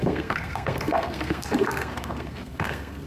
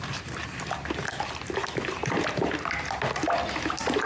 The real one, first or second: second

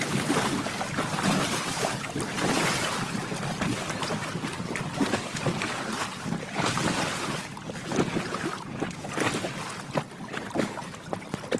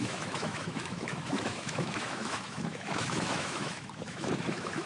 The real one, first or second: first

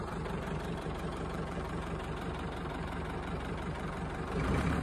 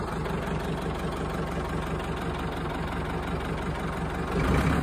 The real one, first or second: second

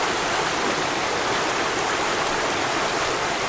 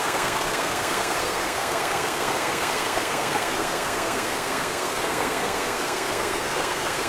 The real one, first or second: first